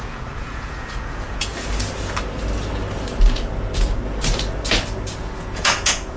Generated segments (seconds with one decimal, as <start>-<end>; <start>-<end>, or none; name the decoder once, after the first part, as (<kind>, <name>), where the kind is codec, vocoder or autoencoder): 0.0-1.5 (vocoder, Vocos); 5.2-6.2